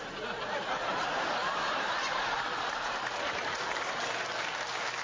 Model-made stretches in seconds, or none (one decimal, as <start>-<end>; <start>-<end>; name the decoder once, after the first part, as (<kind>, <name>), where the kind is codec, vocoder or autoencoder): 0.9-3.9 (vocoder, BigVGAN v2)